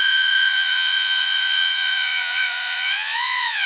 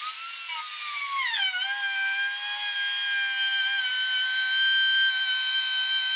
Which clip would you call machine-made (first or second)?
first